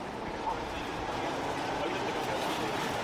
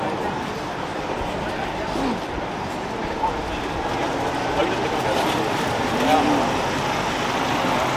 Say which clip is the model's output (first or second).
first